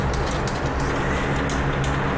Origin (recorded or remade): recorded